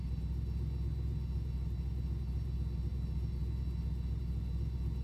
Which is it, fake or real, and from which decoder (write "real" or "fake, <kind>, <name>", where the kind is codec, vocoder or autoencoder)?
real